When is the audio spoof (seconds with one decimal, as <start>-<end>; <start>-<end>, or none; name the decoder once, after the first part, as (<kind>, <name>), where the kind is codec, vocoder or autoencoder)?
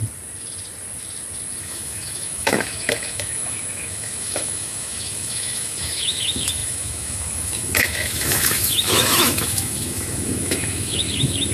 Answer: 1.6-11.5 (autoencoder, DAC-VAE)